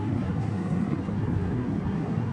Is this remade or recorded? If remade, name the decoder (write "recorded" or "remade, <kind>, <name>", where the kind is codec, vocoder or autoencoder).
remade, codec, SNAC